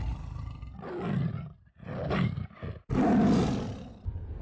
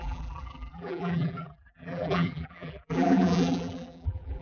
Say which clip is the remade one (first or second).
second